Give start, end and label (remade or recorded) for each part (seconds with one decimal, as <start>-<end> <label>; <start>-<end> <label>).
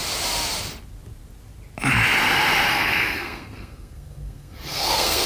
0.0-2.7 recorded; 2.7-5.3 remade